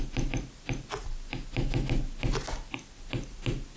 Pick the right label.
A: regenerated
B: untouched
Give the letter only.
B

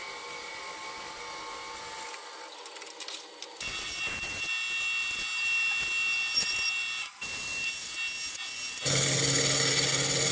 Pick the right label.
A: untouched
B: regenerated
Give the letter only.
A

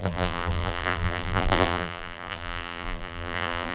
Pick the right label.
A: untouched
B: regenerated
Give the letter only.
B